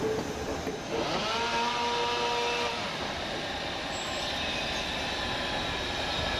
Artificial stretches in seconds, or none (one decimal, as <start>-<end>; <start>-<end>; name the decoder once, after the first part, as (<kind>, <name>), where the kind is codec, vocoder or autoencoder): 2.7-3.3 (vocoder, BigVGAN v2)